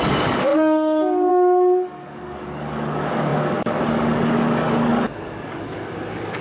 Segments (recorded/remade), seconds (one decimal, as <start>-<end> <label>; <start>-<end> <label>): 0.0-6.4 remade